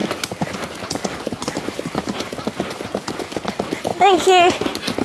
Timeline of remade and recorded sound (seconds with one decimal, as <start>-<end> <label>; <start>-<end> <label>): 0.0-3.9 recorded; 3.9-4.5 remade; 4.5-5.0 recorded